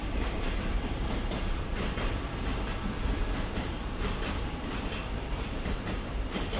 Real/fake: fake